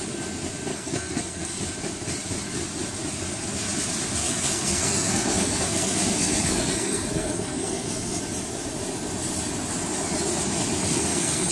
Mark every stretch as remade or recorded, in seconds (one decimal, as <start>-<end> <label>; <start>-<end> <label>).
0.0-0.7 recorded; 0.7-1.6 remade; 1.6-4.2 recorded; 4.2-8.2 remade; 8.2-10.9 recorded; 10.9-11.5 remade

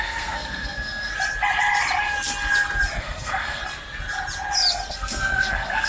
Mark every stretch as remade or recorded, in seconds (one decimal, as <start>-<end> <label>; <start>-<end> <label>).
0.0-1.1 remade; 1.1-3.0 recorded; 3.0-3.6 remade; 3.6-4.9 recorded; 4.9-5.9 remade

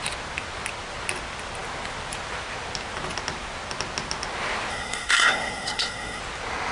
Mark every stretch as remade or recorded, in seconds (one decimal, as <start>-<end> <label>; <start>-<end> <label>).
0.0-4.7 recorded; 4.7-6.2 remade; 6.2-6.7 recorded

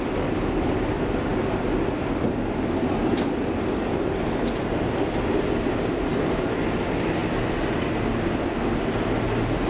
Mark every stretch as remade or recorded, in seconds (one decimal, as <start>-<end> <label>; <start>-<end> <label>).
0.0-9.7 recorded

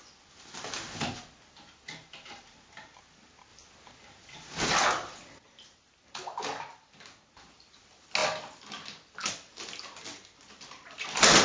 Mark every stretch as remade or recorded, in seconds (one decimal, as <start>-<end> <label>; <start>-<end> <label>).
0.0-11.4 recorded